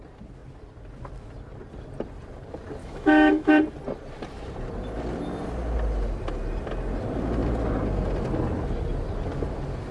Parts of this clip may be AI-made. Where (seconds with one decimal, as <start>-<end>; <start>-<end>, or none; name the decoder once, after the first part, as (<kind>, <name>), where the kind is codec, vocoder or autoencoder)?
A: 2.8-3.6 (autoencoder, DAC-VAE)